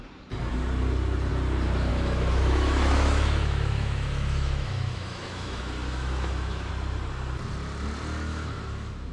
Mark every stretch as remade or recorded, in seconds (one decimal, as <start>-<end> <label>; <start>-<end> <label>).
0.0-1.9 recorded; 1.9-6.7 remade; 6.7-8.3 recorded; 8.3-9.1 remade